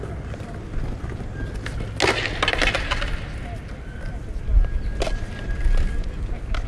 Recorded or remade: recorded